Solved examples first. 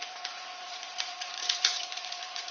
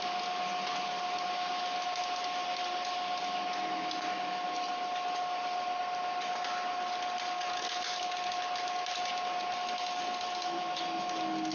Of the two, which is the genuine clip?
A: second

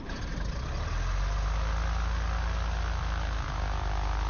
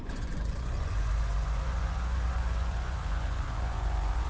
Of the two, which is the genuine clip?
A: first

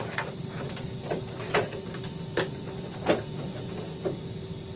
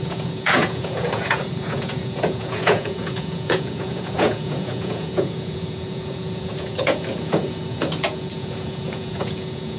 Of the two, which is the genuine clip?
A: first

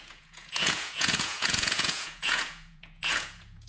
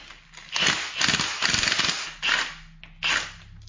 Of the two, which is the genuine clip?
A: second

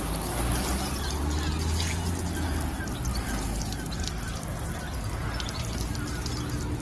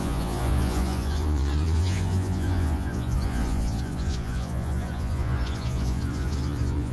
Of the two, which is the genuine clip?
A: first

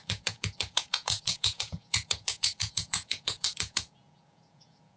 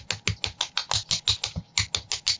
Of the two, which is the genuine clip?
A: second